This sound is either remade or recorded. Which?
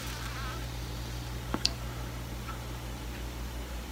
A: recorded